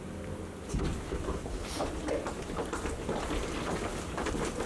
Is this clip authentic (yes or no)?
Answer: yes